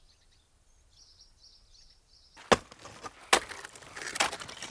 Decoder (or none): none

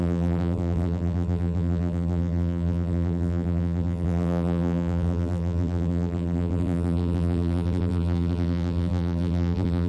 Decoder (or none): vocoder, BigVGAN v2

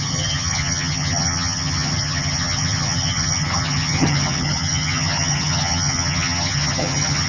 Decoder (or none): vocoder, HiFi-GAN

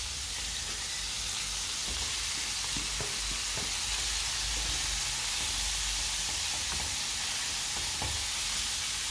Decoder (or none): none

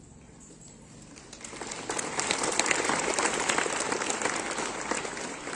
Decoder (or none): vocoder, BigVGAN v2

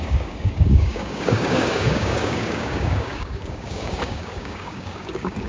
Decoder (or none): codec, DAC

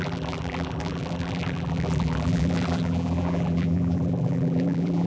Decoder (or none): vocoder, BigVGAN v2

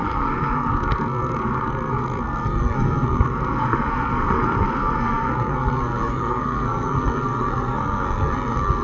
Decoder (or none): codec, SNAC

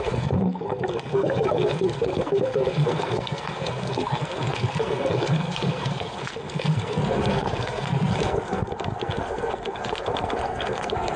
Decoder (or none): codec, SNAC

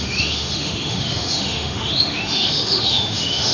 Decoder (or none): autoencoder, DAC-VAE